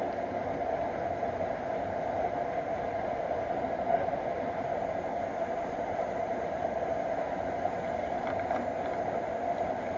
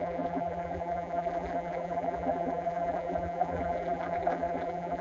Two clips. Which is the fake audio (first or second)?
second